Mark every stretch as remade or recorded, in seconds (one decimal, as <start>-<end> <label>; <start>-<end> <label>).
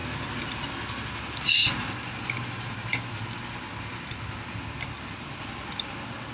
0.0-6.3 recorded